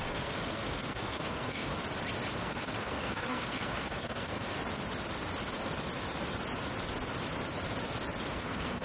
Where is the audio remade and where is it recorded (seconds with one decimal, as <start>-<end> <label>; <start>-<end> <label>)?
0.0-1.7 remade; 1.7-2.4 recorded; 2.4-4.6 remade; 4.6-8.3 recorded; 8.3-8.8 remade